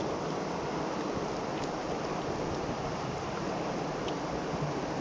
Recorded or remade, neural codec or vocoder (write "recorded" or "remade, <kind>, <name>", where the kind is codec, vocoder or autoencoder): recorded